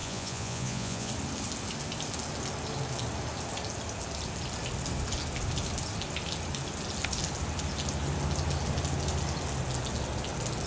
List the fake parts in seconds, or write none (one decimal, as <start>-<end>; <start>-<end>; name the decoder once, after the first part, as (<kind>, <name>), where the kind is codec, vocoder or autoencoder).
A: 0.0-1.1 (vocoder, Vocos)